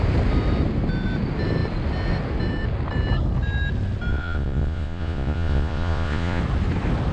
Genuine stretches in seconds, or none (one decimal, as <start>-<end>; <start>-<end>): 0.0-4.1; 6.4-7.1